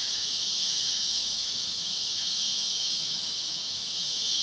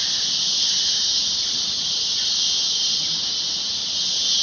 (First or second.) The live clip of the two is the second